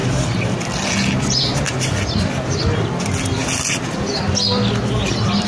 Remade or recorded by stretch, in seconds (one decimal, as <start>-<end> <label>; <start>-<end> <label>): 0.0-5.5 recorded